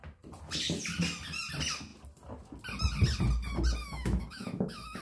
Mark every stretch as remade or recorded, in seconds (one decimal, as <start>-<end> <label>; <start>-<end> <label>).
0.0-3.8 recorded; 3.8-5.0 remade